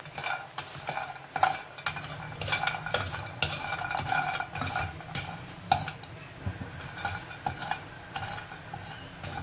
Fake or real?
real